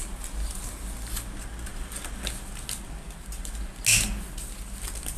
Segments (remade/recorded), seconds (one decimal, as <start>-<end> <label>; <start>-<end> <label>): 0.0-0.8 remade; 0.8-5.2 recorded